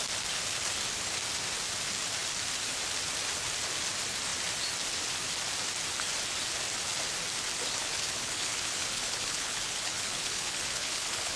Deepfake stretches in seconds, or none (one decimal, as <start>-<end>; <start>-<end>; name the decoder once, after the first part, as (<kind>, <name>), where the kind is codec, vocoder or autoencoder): 7.8-11.4 (codec, HILCodec)